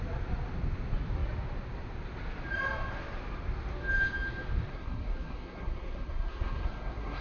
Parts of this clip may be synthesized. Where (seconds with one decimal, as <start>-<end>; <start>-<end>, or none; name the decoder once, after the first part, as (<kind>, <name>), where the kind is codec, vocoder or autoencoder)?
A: 4.7-7.2 (codec, SNAC)